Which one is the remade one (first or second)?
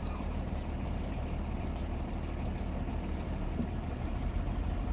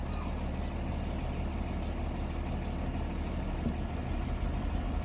first